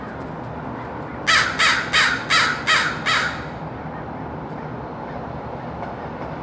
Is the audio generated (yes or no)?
no